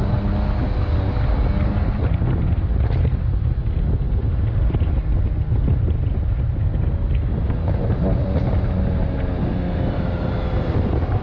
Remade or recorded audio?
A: recorded